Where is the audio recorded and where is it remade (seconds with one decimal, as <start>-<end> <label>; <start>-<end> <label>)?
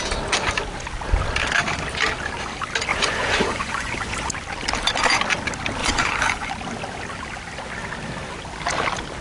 0.0-2.9 recorded; 2.9-4.3 remade; 4.3-5.8 recorded; 5.8-6.5 remade; 6.5-9.2 recorded